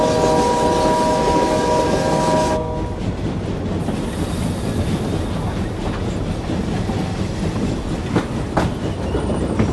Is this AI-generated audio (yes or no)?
no